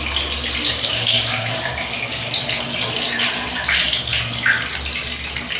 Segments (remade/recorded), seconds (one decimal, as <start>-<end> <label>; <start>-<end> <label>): 0.0-0.6 recorded; 0.6-2.3 remade; 2.3-5.6 recorded